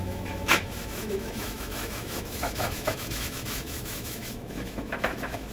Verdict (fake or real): fake